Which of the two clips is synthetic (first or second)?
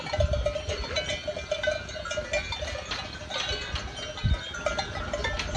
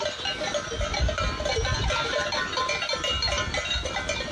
second